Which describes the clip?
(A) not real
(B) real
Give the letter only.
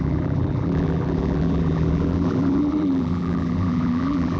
A